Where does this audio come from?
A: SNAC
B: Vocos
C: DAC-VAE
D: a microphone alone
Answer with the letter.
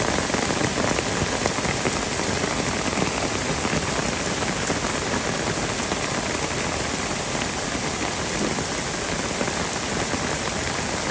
D